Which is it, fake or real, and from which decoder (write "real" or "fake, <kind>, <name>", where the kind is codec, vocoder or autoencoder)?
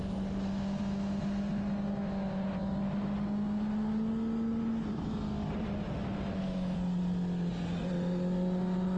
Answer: real